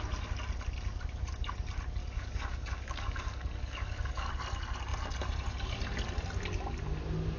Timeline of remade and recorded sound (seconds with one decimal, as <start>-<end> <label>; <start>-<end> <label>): 0.0-2.0 recorded; 2.0-4.3 remade; 4.3-7.4 recorded